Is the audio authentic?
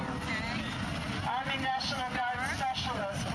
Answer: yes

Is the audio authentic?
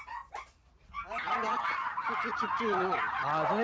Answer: yes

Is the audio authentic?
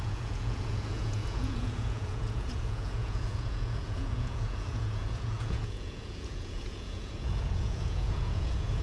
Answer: no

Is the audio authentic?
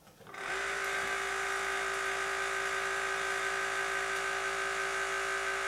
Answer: yes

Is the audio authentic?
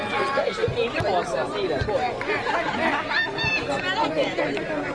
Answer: yes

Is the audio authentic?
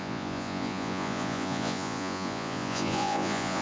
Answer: no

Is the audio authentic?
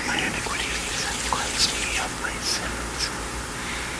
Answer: no